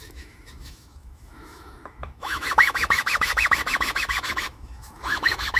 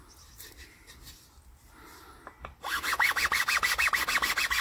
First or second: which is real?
second